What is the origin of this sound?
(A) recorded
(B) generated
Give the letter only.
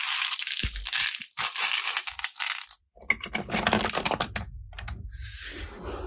A